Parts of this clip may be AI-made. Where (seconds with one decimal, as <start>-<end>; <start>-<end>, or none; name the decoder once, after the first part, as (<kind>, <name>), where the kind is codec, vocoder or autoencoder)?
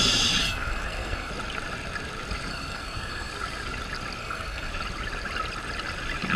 0.4-1.3 (codec, SNAC); 2.5-3.3; 4.2-4.7